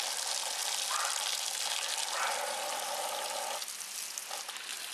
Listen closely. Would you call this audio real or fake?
real